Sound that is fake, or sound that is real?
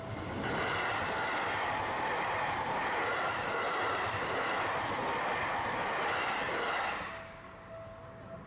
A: real